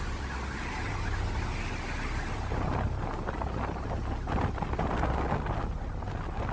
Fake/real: real